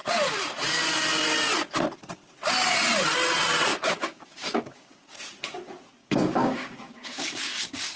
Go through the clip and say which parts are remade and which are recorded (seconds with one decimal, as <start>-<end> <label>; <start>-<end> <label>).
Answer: 0.0-3.7 recorded; 3.7-5.2 remade; 5.2-6.0 recorded; 6.0-8.0 remade